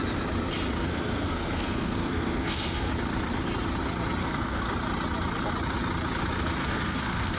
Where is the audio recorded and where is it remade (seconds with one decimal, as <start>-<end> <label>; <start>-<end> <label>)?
0.0-0.8 recorded; 0.8-2.9 remade; 2.9-4.2 recorded; 4.2-4.7 remade; 4.7-6.6 recorded; 6.6-7.4 remade